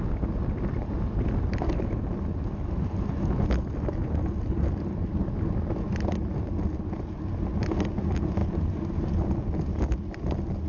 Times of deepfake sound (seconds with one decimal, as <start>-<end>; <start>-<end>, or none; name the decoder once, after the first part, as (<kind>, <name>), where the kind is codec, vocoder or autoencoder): none